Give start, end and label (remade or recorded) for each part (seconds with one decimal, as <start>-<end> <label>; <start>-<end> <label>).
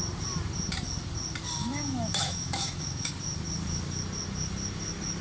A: 0.0-1.6 recorded; 1.6-3.1 remade; 3.1-5.2 recorded